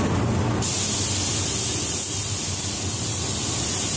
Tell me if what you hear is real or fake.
real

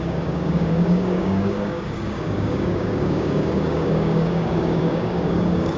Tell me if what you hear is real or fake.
fake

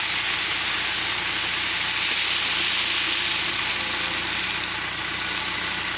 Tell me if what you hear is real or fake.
real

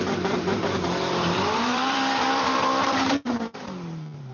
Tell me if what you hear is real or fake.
fake